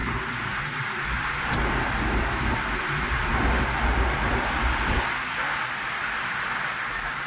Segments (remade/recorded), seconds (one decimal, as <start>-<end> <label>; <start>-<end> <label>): 0.0-7.3 recorded